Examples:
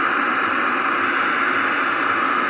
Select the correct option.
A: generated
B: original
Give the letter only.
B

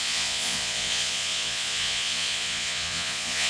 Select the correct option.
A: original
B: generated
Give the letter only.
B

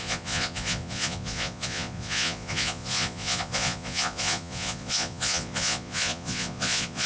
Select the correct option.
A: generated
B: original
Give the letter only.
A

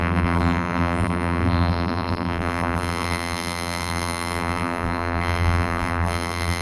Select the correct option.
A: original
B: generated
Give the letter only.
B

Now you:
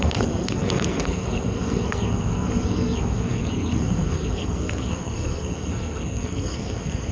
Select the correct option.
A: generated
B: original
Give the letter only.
A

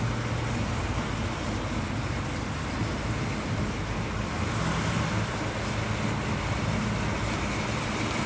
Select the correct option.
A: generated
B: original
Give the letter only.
B